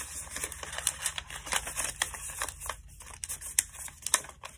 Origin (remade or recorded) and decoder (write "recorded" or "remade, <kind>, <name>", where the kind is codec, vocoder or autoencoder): recorded